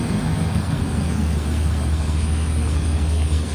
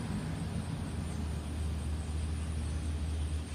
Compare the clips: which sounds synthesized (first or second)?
first